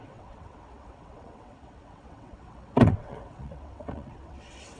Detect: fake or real fake